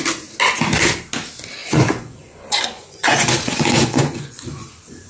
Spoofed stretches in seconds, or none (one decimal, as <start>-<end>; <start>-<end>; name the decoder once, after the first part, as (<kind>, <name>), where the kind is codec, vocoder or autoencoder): 1.6-5.1 (vocoder, Vocos)